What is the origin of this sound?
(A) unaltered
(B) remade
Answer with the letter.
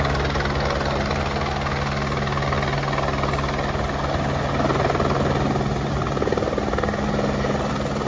A